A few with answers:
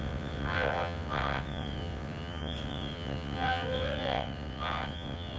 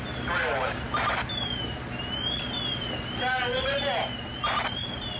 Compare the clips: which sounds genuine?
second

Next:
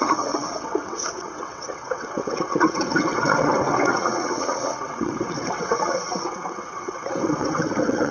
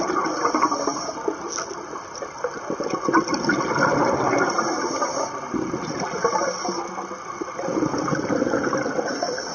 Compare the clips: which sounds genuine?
second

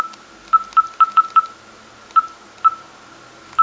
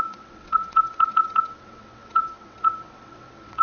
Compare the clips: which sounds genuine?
first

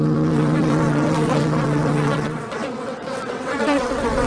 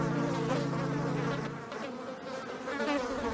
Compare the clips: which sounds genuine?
second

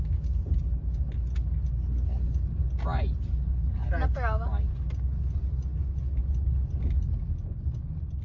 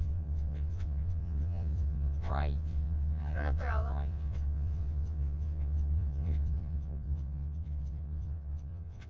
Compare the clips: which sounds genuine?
first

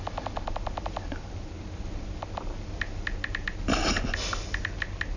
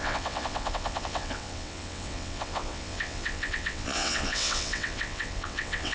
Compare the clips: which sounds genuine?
first